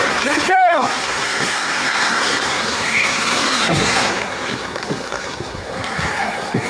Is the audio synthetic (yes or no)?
yes